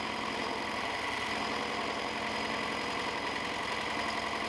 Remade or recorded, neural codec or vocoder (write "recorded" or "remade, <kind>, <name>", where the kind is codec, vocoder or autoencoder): recorded